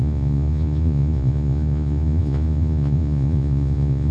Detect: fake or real fake